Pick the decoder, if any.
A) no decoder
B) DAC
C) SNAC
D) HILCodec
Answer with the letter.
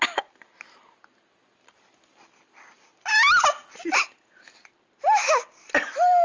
A